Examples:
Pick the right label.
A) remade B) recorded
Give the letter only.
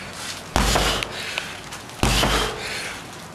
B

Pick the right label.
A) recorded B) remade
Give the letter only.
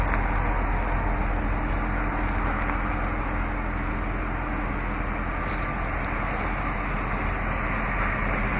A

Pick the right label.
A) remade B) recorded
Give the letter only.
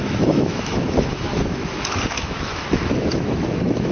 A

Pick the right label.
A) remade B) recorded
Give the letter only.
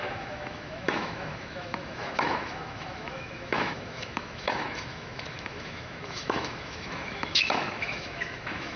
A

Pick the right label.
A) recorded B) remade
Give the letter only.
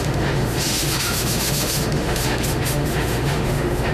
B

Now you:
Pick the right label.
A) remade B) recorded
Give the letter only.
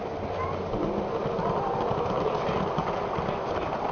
B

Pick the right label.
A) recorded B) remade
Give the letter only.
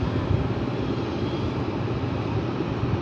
A